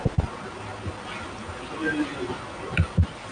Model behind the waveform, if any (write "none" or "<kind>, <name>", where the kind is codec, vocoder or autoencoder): none